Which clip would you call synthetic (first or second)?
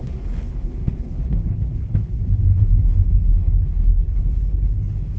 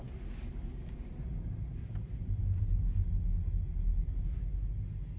first